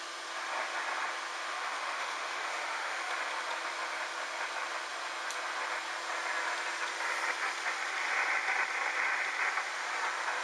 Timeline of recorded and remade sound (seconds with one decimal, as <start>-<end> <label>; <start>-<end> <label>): 0.0-1.5 recorded; 1.5-3.1 remade; 3.1-10.4 recorded